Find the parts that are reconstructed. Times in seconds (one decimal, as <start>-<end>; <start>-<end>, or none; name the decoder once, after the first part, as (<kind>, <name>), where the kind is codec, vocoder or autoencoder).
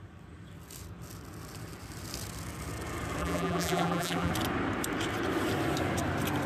3.2-4.3 (vocoder, BigVGAN v2)